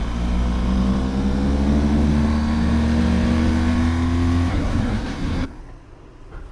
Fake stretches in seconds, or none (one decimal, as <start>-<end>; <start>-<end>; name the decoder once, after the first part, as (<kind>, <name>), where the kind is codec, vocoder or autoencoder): 4.5-5.6 (codec, SNAC)